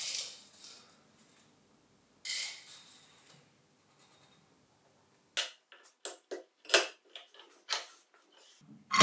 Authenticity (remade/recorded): recorded